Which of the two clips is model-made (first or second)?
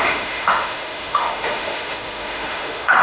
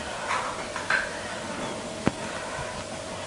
first